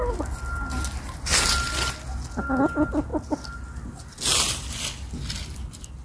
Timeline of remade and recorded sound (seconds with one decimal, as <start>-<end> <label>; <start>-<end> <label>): 0.0-6.0 recorded